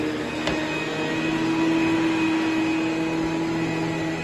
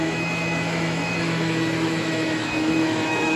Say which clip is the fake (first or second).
second